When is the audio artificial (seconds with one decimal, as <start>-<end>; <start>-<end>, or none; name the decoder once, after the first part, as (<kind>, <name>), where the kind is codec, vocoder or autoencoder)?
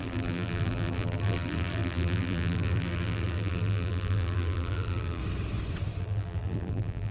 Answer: 0.0-5.2 (vocoder, BigVGAN v2); 6.0-7.1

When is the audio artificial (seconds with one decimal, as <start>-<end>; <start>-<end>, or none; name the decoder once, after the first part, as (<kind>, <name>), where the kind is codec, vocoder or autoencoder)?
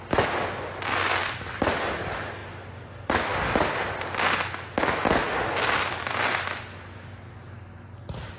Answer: none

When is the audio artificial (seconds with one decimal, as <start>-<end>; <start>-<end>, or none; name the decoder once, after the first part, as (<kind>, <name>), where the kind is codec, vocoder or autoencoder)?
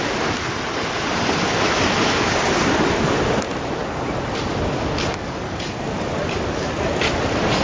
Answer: none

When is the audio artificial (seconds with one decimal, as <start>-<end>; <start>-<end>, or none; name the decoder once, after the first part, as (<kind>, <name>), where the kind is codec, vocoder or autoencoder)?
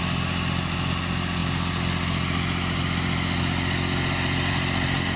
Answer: none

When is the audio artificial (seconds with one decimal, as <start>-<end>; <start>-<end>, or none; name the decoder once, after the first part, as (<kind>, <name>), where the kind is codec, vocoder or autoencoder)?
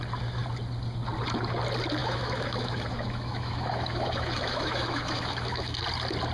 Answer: 2.0-5.8 (autoencoder, DAC-VAE)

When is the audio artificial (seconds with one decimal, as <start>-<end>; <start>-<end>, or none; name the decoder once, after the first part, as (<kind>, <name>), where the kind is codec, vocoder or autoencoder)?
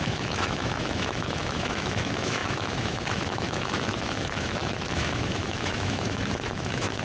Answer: 0.0-7.0 (autoencoder, DAC-VAE)